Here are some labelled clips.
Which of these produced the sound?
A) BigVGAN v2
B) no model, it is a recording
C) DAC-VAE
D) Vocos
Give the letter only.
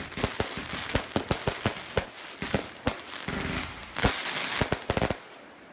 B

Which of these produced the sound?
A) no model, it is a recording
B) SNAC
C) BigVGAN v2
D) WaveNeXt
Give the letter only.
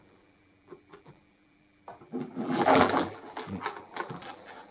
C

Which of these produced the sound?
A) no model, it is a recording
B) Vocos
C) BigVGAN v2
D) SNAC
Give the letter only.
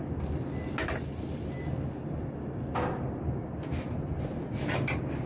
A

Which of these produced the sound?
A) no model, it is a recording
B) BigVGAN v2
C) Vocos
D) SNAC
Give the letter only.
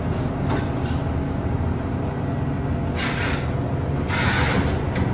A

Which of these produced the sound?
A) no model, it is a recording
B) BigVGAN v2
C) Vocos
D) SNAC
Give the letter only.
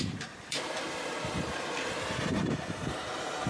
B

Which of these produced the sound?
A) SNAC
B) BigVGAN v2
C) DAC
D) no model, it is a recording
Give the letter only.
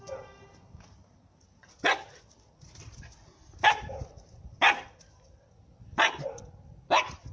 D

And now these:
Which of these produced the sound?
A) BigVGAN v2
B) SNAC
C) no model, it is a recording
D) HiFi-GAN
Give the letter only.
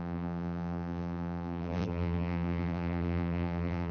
A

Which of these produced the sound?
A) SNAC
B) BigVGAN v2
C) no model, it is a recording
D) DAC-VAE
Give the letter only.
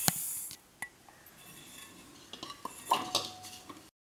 C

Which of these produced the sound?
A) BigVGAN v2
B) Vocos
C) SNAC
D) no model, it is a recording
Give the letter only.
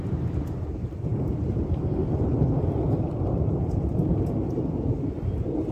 A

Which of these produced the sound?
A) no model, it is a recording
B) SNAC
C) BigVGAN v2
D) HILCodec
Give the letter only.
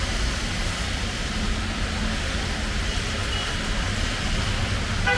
A